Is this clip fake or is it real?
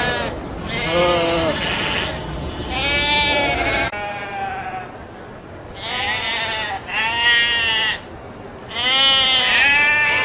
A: real